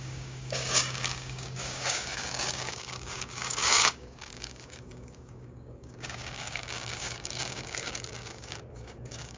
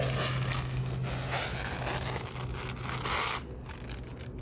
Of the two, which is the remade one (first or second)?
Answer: first